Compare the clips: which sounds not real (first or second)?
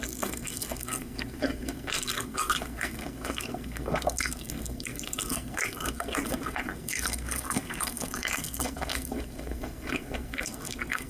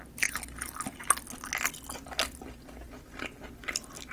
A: first